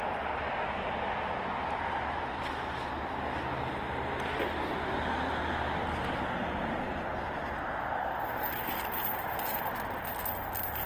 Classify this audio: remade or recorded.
recorded